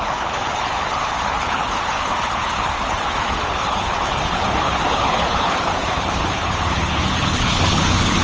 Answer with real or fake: fake